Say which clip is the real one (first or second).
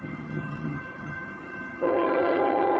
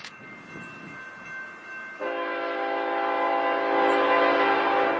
second